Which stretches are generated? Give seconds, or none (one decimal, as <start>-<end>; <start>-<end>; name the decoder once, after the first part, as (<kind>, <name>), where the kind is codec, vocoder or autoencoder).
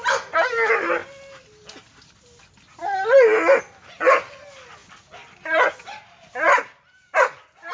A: 4.8-6.9 (vocoder, BigVGAN v2)